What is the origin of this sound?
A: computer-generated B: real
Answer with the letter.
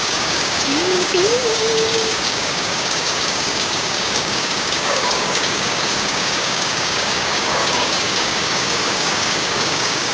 A